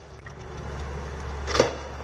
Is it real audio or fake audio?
real